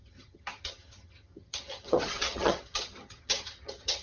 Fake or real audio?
fake